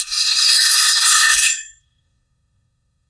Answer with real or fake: fake